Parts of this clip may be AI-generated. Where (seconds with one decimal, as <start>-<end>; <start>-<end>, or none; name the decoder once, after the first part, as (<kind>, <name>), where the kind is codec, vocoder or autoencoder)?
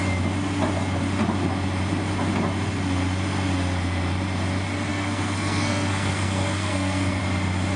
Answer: 4.9-7.2 (codec, SNAC)